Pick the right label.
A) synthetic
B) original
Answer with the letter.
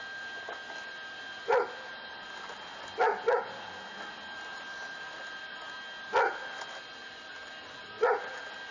B